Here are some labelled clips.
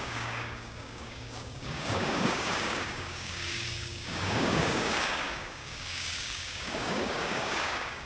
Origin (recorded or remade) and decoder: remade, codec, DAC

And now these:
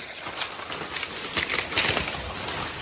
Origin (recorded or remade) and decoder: recorded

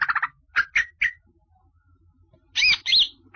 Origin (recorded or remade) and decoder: recorded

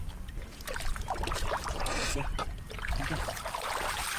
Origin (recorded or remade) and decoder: recorded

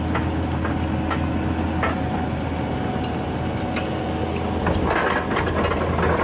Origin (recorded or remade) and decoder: recorded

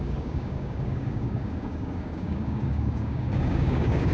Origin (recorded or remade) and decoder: remade, codec, DAC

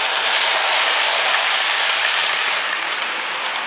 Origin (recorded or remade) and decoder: recorded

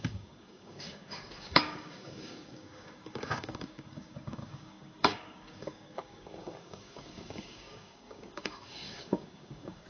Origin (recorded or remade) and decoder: remade, codec, DAC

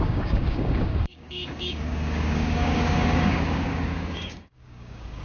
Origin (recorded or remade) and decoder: remade, codec, DAC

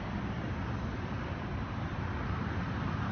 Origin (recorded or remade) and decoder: recorded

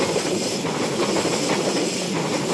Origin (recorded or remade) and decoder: recorded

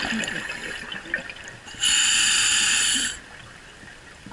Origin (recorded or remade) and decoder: recorded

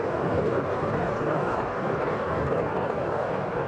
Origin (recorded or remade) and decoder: remade, codec, DAC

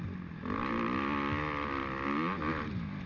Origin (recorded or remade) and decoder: recorded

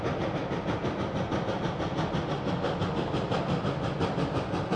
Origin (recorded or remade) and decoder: recorded